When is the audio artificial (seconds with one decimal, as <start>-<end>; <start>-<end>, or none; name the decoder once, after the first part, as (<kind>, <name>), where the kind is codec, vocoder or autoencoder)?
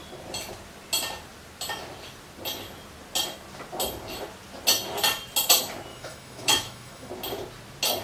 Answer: 5.9-7.1 (autoencoder, DAC-VAE)